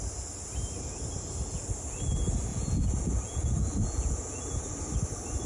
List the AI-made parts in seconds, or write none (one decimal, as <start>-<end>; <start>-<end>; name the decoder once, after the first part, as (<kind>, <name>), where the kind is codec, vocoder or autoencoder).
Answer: 2.5-4.7 (vocoder, Vocos)